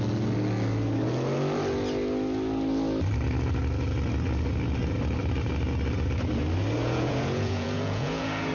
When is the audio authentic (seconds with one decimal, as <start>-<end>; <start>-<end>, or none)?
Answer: 0.0-6.8